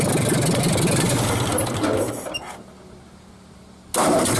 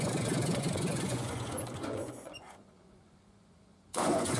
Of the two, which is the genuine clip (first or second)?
first